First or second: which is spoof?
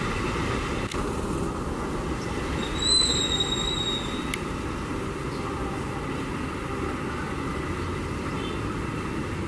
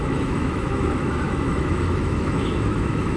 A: second